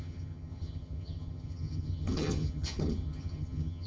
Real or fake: fake